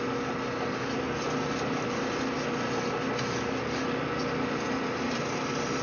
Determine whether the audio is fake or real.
real